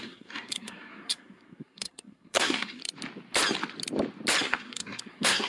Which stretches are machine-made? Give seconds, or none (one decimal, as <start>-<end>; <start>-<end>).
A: 0.0-2.8; 4.4-5.5